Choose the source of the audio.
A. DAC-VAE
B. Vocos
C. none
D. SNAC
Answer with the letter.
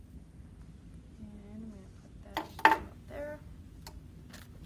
C